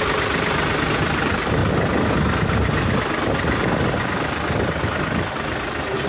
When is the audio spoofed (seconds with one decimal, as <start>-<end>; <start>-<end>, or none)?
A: none